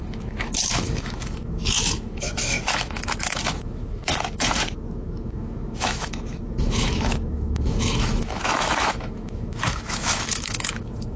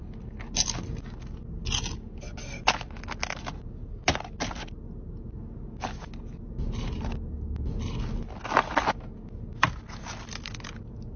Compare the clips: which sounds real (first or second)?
second